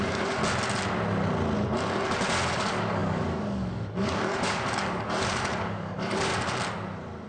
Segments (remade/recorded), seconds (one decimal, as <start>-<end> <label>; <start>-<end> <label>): 0.0-0.4 remade; 0.4-2.5 recorded; 2.5-6.3 remade; 6.3-7.3 recorded